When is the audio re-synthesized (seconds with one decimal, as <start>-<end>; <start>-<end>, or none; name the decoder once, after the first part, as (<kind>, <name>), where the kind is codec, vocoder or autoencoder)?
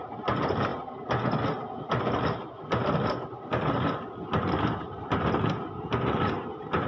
none